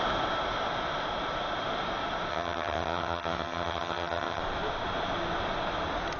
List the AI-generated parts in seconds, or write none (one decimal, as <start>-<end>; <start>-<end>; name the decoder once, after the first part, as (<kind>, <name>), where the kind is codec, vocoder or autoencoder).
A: 2.3-4.4 (vocoder, HiFi-GAN)